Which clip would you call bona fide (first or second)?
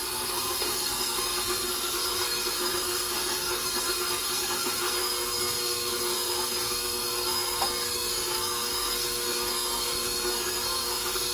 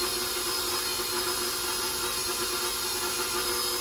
second